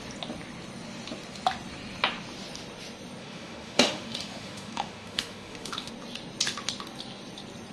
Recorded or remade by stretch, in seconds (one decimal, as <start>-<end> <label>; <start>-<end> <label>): 0.0-3.2 recorded; 3.2-5.9 remade; 5.9-7.7 recorded